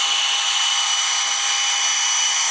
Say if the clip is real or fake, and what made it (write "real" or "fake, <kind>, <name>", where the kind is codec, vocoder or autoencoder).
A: real